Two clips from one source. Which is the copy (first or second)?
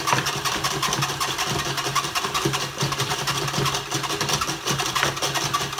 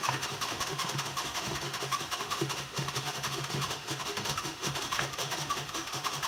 second